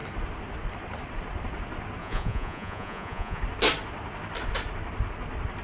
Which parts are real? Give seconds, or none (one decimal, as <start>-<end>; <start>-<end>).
0.0-2.0; 3.4-5.6